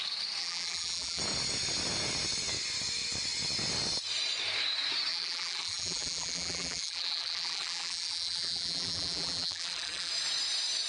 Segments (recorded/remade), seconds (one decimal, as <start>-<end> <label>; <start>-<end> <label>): 0.0-0.4 recorded; 0.4-1.2 remade; 1.2-5.1 recorded; 5.1-10.1 remade; 10.1-10.9 recorded